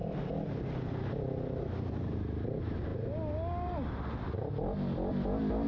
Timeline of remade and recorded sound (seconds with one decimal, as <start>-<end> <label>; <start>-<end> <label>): 0.0-1.8 recorded; 1.8-2.9 remade; 2.9-5.7 recorded